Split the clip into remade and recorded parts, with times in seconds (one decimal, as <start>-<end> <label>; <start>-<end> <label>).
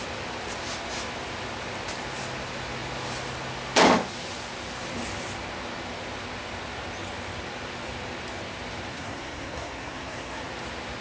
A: 0.0-8.9 recorded; 8.9-10.5 remade; 10.5-11.0 recorded